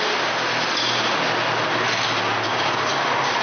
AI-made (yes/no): no